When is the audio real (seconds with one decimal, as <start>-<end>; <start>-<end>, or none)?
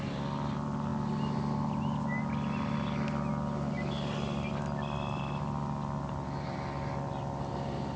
0.0-8.0